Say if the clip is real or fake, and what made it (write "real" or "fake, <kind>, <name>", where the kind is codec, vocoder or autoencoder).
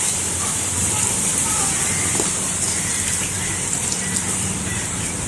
fake, vocoder, BigVGAN v2